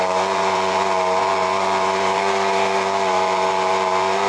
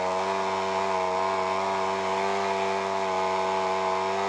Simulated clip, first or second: first